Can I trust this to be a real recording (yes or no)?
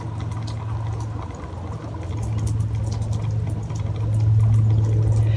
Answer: yes